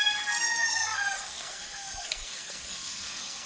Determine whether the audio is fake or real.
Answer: fake